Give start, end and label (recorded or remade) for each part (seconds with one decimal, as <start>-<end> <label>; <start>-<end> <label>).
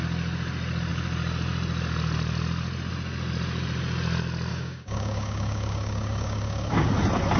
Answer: 0.0-4.5 recorded; 4.5-6.9 remade; 6.9-7.4 recorded